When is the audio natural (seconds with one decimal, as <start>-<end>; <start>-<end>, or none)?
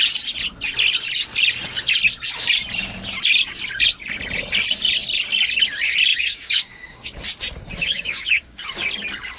0.0-6.1; 7.2-7.8; 8.7-9.4